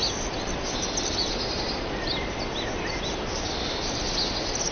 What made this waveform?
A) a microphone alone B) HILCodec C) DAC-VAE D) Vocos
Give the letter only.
A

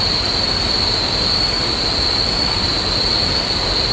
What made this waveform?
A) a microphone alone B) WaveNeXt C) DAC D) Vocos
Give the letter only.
A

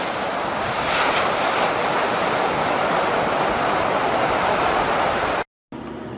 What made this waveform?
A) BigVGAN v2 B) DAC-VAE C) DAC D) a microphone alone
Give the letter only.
D